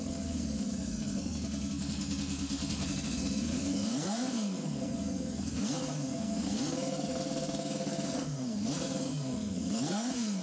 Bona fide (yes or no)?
no